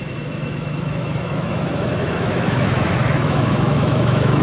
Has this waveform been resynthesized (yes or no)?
yes